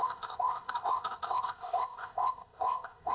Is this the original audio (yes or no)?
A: no